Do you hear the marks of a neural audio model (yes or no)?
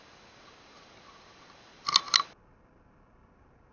no